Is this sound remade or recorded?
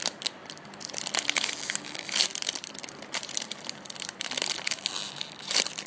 remade